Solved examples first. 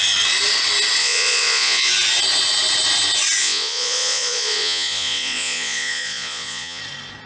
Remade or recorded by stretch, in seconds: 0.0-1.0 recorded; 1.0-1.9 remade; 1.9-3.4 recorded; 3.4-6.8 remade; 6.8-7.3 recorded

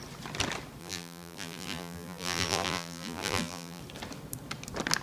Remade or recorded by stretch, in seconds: 0.0-0.8 recorded; 0.8-3.8 remade; 3.8-5.0 recorded

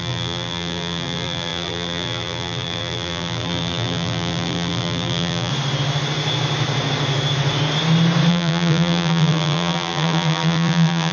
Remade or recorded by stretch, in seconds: 0.0-5.5 remade; 5.5-8.3 recorded; 8.3-11.1 remade

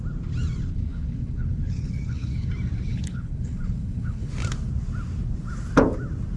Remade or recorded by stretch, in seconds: 0.0-0.7 recorded; 0.7-2.5 remade; 2.5-2.9 recorded; 2.9-4.3 remade; 4.3-6.4 recorded

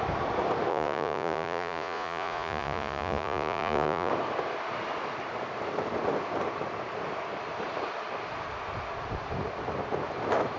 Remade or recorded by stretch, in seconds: 0.0-0.7 recorded; 0.7-4.1 remade; 4.1-10.6 recorded

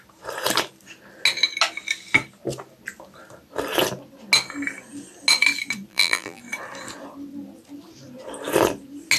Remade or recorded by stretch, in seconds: 0.0-5.9 recorded; 5.9-6.4 remade; 6.4-9.2 recorded

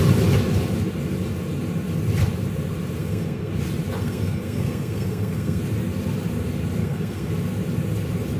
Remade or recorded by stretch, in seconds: 0.0-3.0 recorded; 3.0-3.5 remade; 3.5-4.0 recorded; 4.0-5.6 remade; 5.6-6.8 recorded; 6.8-7.3 remade; 7.3-8.4 recorded

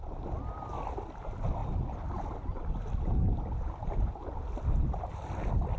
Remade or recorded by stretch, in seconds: 0.0-5.8 recorded